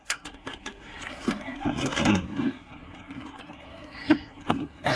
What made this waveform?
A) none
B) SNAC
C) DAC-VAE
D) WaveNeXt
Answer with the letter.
B